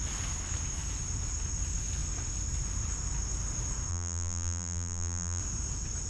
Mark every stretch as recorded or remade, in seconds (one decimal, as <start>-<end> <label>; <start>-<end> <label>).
0.0-3.9 recorded; 3.9-5.4 remade; 5.4-6.1 recorded